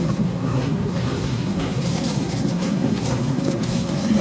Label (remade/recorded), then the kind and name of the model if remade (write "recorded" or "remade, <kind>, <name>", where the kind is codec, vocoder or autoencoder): remade, codec, SNAC